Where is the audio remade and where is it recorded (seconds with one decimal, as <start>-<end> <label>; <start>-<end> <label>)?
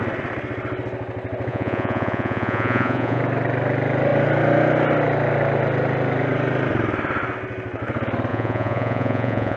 0.0-1.5 recorded; 1.5-3.2 remade; 3.2-8.3 recorded; 8.3-9.6 remade